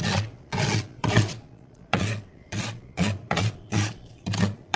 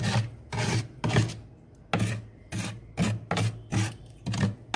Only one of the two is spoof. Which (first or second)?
first